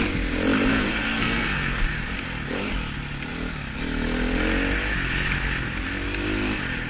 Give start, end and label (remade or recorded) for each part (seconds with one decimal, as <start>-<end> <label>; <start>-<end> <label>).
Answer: 0.0-0.7 recorded; 0.7-1.8 remade; 1.8-6.9 recorded